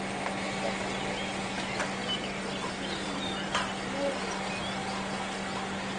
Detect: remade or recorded recorded